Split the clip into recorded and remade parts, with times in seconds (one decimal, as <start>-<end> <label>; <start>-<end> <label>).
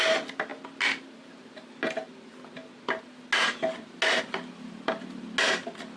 0.0-6.0 recorded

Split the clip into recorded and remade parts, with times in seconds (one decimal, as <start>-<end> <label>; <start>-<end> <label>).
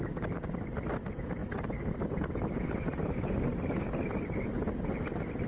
0.0-5.5 recorded